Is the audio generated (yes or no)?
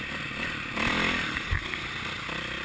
no